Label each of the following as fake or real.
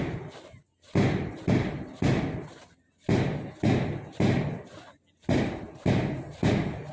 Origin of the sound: real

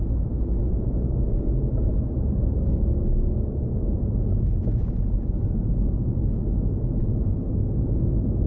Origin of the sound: real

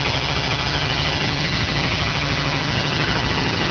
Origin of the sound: fake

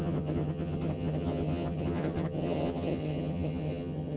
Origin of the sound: fake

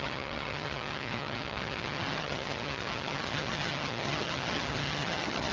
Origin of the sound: fake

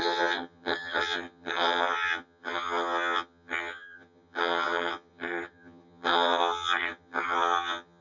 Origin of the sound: fake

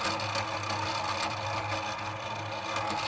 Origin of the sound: real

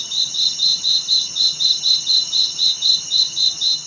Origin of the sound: fake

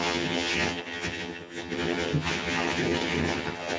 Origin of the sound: fake